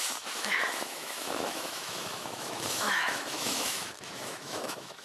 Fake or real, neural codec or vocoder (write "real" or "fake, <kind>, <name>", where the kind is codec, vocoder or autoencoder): fake, autoencoder, DAC-VAE